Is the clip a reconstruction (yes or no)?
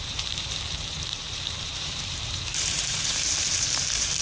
yes